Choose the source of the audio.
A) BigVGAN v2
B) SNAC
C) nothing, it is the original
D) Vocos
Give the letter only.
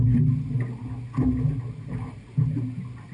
C